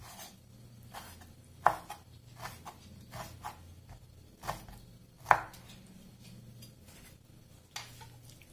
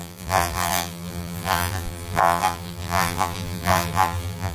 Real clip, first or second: first